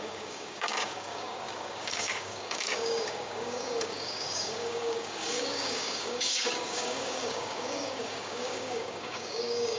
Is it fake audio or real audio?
fake